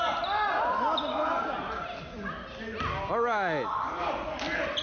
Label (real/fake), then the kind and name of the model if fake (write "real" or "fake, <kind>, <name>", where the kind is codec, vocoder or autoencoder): real